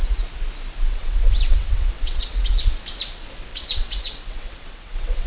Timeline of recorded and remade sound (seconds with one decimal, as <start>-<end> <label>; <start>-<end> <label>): 0.0-0.9 recorded; 0.9-2.5 remade; 2.5-3.5 recorded; 3.5-5.3 remade